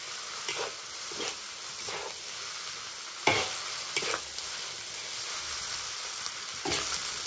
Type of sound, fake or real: real